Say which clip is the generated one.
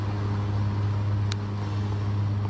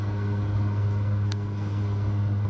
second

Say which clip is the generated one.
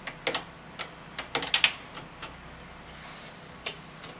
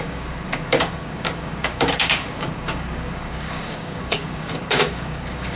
second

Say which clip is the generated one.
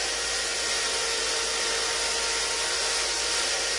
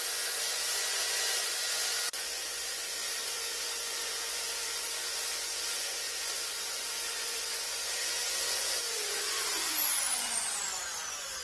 second